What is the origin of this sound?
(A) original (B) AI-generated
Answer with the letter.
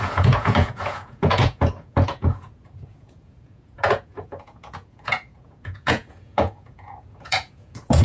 B